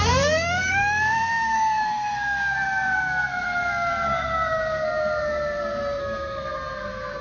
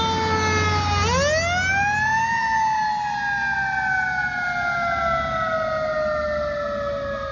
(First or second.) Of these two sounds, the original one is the second